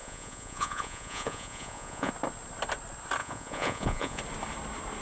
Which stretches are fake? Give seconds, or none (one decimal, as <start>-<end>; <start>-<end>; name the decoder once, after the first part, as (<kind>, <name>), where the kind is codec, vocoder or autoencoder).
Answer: 0.0-2.1 (vocoder, Vocos); 3.2-4.2